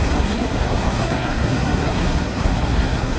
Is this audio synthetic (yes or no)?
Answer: yes